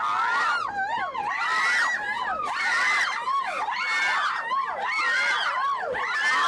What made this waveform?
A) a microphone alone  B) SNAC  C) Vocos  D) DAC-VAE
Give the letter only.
A